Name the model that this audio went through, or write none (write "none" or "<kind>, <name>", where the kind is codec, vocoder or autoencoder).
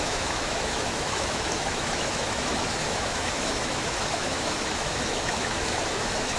autoencoder, DAC-VAE